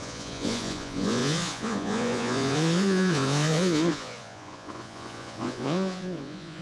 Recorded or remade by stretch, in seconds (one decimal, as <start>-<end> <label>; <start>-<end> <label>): 0.0-6.6 remade